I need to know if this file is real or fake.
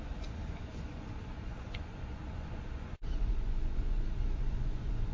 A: fake